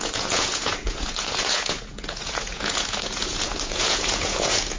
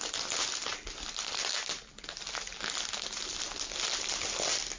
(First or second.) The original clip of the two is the second